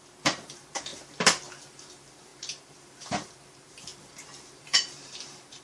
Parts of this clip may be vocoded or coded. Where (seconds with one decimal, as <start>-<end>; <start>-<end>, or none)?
0.0-0.9; 1.7-5.6